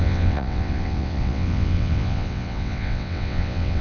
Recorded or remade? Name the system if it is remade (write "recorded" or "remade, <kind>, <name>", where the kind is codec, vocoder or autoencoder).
remade, vocoder, WaveNeXt